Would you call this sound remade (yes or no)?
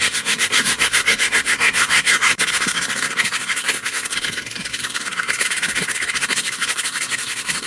yes